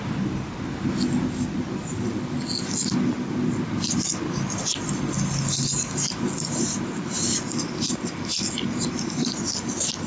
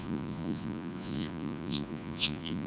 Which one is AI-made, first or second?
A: second